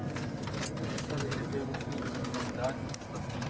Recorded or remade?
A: recorded